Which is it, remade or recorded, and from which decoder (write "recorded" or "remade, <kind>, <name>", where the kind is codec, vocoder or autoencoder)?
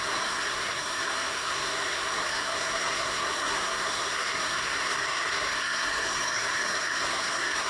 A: remade, codec, SNAC